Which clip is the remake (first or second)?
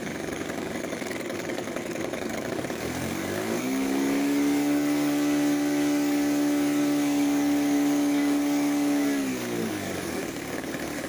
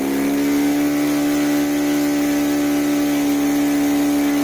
first